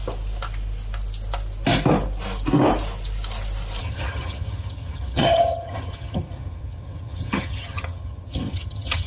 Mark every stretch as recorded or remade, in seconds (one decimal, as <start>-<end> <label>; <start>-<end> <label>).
0.0-3.8 recorded; 3.8-9.1 remade